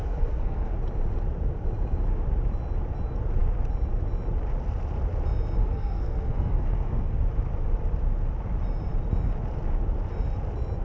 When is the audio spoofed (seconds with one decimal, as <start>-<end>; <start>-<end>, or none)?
0.0-0.7; 5.6-7.2